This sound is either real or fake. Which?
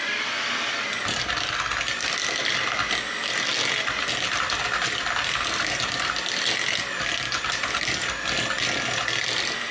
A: real